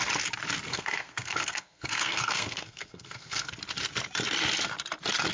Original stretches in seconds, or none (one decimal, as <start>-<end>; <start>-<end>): 0.0-0.7; 3.5-5.3